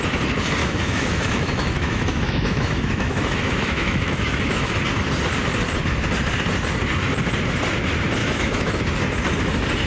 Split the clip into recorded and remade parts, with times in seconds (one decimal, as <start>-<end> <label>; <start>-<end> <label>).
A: 0.0-0.6 recorded; 0.6-4.7 remade; 4.7-8.2 recorded; 8.2-8.8 remade; 8.8-9.9 recorded